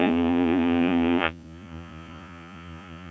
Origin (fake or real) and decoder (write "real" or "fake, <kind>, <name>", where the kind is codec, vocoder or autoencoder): fake, vocoder, Vocos